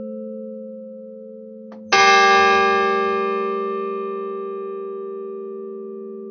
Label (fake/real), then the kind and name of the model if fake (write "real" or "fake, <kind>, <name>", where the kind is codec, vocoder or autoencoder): real